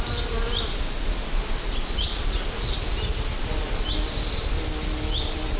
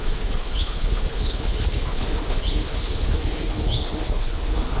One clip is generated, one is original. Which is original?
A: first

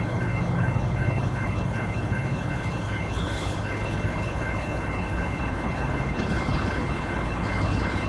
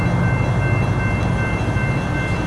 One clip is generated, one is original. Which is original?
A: second